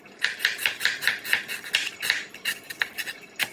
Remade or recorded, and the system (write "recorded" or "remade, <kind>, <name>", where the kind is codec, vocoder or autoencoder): recorded